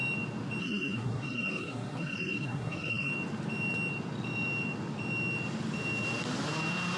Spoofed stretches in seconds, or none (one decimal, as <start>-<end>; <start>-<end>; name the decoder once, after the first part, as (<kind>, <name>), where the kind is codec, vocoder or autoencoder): 0.6-3.1 (codec, SNAC)